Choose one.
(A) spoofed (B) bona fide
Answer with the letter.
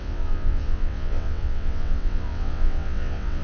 A